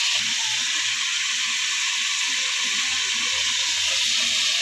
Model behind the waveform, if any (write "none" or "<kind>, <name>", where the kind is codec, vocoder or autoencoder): none